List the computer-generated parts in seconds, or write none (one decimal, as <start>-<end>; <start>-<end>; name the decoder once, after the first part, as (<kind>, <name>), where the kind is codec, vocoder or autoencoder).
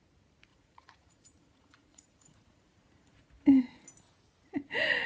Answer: 0.5-3.6 (vocoder, Vocos)